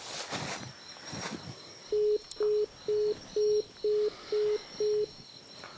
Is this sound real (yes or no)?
yes